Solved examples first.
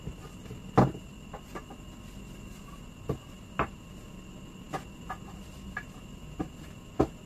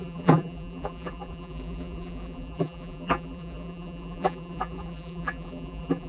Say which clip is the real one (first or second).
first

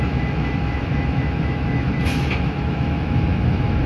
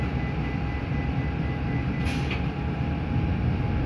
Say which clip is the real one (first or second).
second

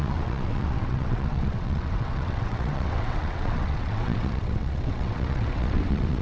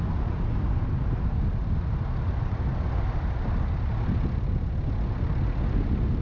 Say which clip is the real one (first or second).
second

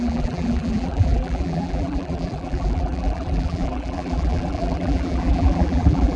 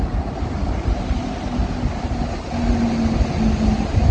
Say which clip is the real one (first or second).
second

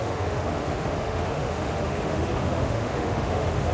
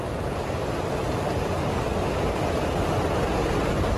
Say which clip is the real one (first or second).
second